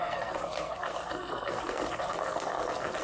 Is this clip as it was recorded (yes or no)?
no